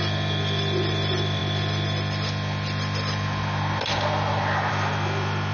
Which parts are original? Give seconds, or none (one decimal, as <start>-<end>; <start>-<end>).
0.0-5.5